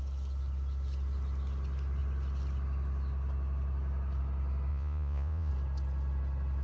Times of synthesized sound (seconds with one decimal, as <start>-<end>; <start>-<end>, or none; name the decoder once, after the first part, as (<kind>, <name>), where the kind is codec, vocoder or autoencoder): 4.7-5.5 (vocoder, Vocos)